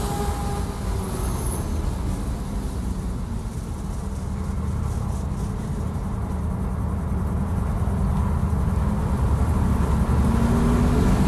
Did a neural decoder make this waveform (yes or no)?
no